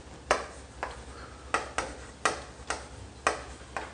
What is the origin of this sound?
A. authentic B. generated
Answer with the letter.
A